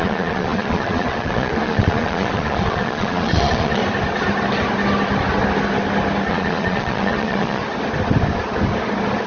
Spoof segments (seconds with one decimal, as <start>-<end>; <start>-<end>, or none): 0.0-3.8; 6.3-7.6